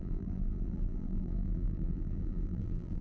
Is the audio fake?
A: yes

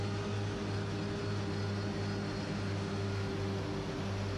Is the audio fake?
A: no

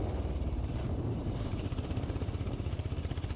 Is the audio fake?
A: yes